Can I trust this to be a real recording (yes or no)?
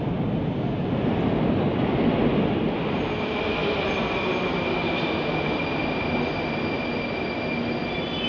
yes